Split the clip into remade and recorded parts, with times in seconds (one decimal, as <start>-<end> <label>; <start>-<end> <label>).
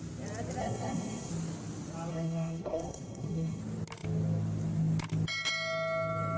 0.0-0.6 recorded; 0.6-1.3 remade; 1.3-2.1 recorded; 2.1-3.6 remade; 3.6-6.4 recorded